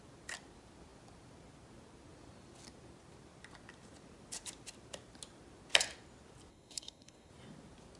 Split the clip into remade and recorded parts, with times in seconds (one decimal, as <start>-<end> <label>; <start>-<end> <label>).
0.0-6.5 recorded; 6.5-7.3 remade; 7.3-8.0 recorded